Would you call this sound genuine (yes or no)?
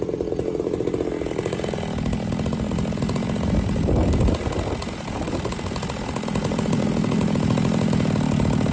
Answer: yes